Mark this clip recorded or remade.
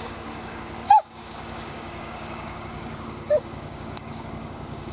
remade